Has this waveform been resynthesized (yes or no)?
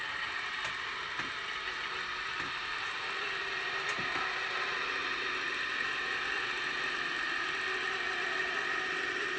no